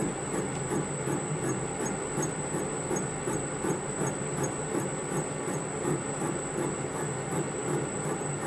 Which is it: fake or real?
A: real